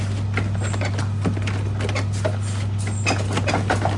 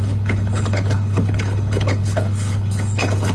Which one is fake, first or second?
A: second